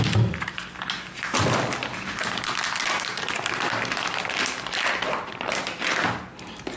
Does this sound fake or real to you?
real